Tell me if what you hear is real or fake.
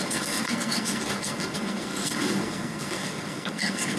fake